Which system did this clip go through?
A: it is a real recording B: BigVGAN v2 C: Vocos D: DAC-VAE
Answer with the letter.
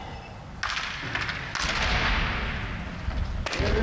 A